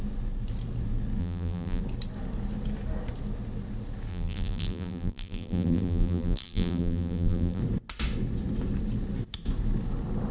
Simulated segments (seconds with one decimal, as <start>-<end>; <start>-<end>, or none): 1.2-1.8; 4.1-7.6